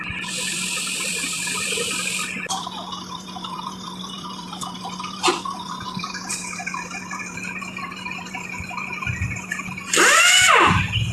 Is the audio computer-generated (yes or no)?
yes